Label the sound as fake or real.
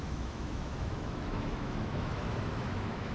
fake